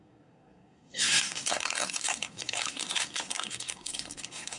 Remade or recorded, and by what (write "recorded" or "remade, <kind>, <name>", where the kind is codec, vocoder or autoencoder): remade, codec, SNAC